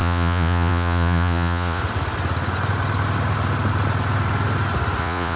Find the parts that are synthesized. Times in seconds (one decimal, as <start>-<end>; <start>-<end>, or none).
0.0-1.8; 5.0-5.4